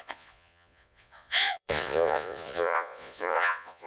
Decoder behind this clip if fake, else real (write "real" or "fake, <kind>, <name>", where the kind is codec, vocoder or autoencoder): fake, vocoder, Vocos